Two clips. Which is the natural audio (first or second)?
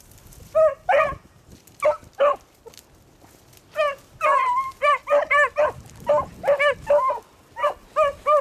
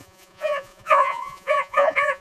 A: first